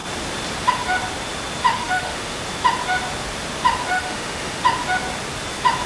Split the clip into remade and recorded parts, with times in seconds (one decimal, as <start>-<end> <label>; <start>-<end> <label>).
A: 0.0-1.7 recorded; 1.7-2.4 remade; 2.4-3.9 recorded; 3.9-4.6 remade; 4.6-5.9 recorded

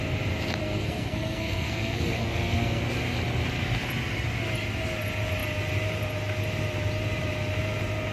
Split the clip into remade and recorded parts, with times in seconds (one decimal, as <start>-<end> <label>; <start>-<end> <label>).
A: 0.0-0.6 recorded; 0.6-2.8 remade; 2.8-8.1 recorded

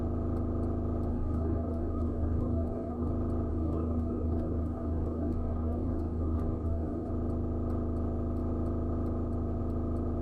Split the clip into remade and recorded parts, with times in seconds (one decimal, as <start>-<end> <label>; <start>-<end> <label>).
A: 0.0-1.1 recorded; 1.1-3.1 remade; 3.1-3.5 recorded; 3.5-7.1 remade; 7.1-10.2 recorded

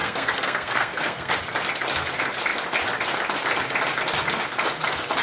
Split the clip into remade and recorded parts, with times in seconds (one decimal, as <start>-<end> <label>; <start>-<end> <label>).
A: 0.0-1.3 remade; 1.3-5.2 recorded

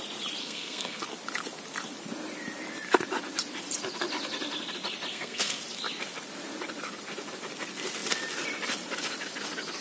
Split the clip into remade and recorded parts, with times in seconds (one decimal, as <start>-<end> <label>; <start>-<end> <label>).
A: 0.0-0.4 recorded; 0.4-1.0 remade; 1.0-5.1 recorded; 5.1-5.6 remade; 5.6-9.8 recorded

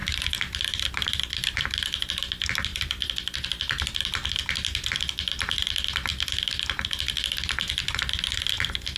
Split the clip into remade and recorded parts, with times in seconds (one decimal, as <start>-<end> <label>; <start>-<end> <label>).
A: 0.0-0.8 remade; 0.8-2.7 recorded; 2.7-4.0 remade; 4.0-9.0 recorded

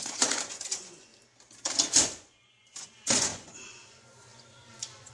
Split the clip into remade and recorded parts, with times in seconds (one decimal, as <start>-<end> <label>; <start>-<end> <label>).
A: 0.0-1.1 remade; 1.1-1.9 recorded; 1.9-5.1 remade